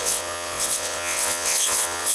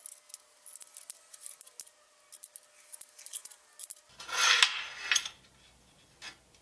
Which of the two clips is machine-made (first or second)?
first